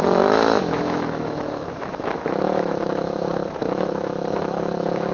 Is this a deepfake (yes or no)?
yes